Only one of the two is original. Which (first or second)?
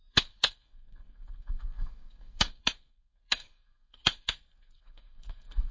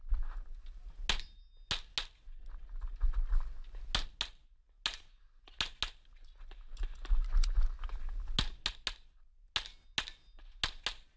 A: second